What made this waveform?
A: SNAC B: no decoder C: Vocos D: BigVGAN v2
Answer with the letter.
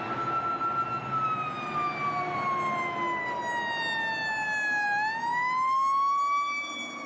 B